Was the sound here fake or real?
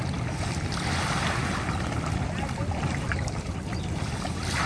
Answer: real